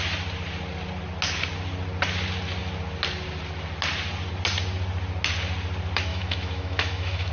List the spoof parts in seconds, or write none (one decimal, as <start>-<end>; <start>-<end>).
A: 6.1-7.3